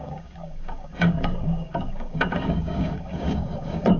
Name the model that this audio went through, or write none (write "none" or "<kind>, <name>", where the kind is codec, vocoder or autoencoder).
codec, DAC